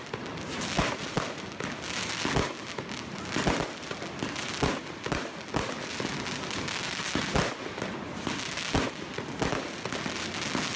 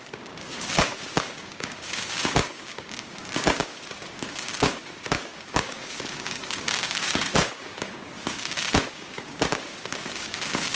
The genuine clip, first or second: first